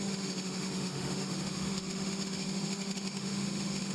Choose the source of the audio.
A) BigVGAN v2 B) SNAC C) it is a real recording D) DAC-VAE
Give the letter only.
D